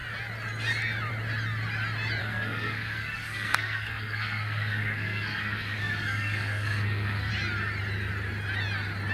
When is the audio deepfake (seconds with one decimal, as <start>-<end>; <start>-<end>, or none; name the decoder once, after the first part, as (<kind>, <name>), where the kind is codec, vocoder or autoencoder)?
2.2-7.3 (codec, SNAC)